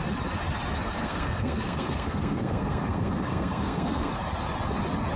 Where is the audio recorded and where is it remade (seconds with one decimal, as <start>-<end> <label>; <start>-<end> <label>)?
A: 0.0-1.0 recorded; 1.0-4.1 remade; 4.1-5.2 recorded